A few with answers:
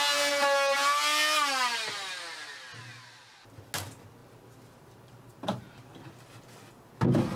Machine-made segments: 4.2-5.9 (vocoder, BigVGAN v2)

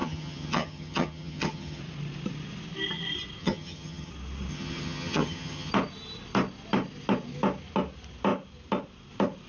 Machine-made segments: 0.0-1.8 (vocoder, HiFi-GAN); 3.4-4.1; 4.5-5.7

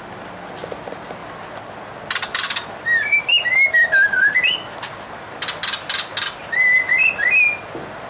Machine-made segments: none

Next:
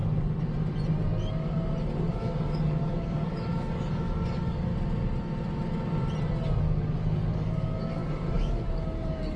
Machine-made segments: 2.1-4.7 (codec, DAC); 6.6-9.4

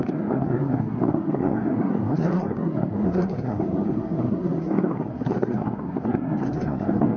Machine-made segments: 0.0-7.2 (codec, SNAC)

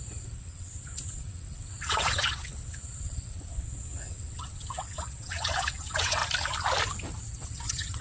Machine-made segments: 0.0-6.2 (vocoder, WaveNeXt); 7.2-8.0

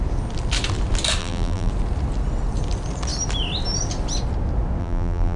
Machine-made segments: 1.2-1.7 (vocoder, BigVGAN v2); 4.8-5.4

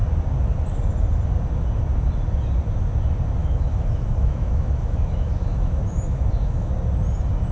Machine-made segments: 3.4-6.7 (autoencoder, DAC-VAE)